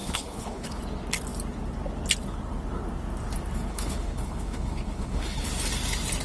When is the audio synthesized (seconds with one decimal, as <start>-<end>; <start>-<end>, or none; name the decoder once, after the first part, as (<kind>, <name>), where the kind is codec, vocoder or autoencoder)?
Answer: 0.0-0.8 (codec, HILCodec); 3.7-5.5